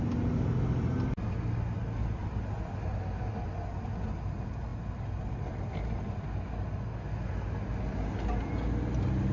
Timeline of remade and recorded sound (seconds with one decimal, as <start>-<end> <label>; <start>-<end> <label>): 0.0-9.3 recorded